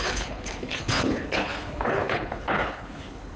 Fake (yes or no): yes